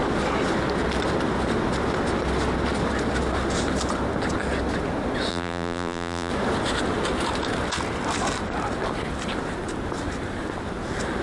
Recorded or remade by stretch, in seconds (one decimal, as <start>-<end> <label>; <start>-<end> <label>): 0.0-5.3 recorded; 5.3-6.3 remade; 6.3-11.2 recorded